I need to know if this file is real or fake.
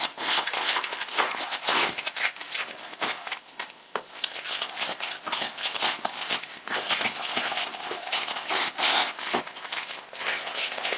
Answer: fake